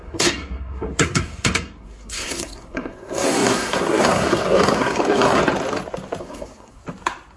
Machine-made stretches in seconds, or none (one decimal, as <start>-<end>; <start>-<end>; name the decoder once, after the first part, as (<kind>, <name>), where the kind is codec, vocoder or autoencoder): 0.0-5.4 (codec, SNAC); 6.2-6.8